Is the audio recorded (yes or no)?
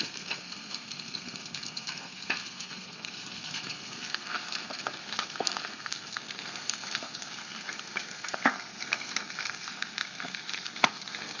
no